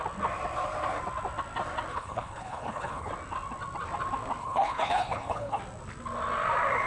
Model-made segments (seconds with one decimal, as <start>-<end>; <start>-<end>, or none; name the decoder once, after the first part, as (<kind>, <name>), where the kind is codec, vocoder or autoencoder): 1.9-3.1 (codec, HILCodec); 4.4-5.6